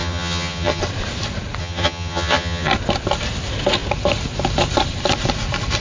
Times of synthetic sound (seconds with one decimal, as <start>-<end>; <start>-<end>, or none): 0.0-0.8; 1.6-2.7

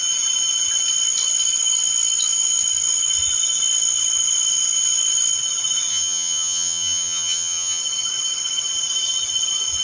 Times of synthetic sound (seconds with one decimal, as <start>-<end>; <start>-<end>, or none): 5.9-7.8

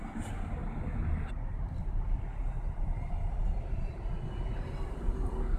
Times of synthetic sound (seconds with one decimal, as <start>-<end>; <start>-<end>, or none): none

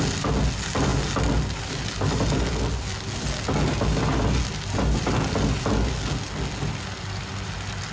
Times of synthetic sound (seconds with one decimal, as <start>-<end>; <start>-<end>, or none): none

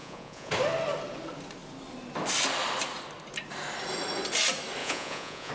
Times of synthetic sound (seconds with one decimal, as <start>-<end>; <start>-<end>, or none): 0.0-0.5; 4.8-5.5

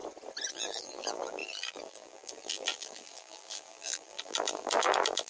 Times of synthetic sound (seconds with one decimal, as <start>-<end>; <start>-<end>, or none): 0.5-5.3

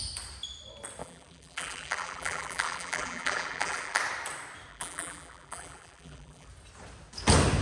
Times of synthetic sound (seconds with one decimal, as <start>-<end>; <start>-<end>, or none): 1.0-4.0; 4.7-6.5

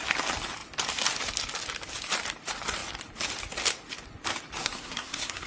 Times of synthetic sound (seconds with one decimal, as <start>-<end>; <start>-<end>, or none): 4.6-5.5